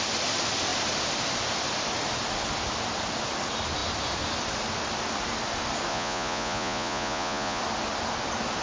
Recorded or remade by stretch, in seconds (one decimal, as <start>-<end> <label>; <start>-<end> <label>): 0.0-5.9 recorded; 5.9-7.6 remade; 7.6-8.6 recorded

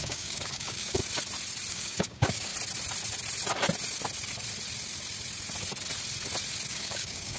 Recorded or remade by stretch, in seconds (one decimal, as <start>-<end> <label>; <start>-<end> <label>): 0.0-1.0 remade; 1.0-1.7 recorded; 1.7-2.5 remade; 2.5-6.7 recorded; 6.7-7.4 remade

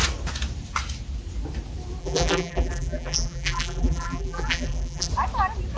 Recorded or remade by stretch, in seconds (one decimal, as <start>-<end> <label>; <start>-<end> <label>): 0.0-2.0 recorded; 2.0-5.1 remade; 5.1-5.8 recorded

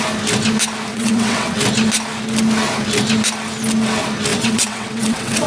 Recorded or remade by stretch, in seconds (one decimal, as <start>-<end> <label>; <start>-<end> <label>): 0.0-0.9 recorded; 0.9-1.6 remade; 1.6-4.3 recorded; 4.3-5.5 remade

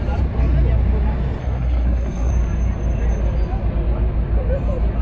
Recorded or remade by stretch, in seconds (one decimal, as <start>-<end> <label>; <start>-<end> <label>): 0.0-1.4 recorded; 1.4-2.3 remade; 2.3-5.0 recorded